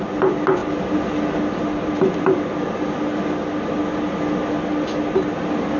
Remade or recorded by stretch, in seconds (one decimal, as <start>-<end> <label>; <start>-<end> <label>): 0.0-5.8 recorded